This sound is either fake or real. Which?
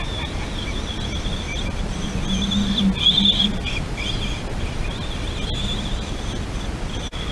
real